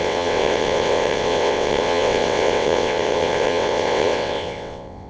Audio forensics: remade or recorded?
remade